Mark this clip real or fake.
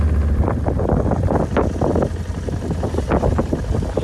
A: real